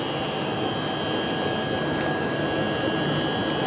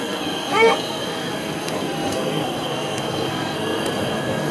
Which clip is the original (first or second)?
first